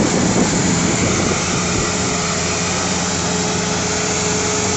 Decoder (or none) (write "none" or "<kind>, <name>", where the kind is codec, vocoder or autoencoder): none